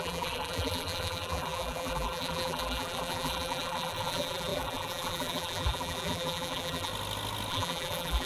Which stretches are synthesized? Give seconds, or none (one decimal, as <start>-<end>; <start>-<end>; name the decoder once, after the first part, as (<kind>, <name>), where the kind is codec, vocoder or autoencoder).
0.0-6.9 (vocoder, BigVGAN v2); 7.5-8.3